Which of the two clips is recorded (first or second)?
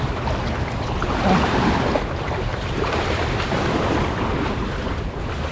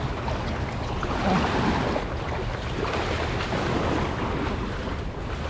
second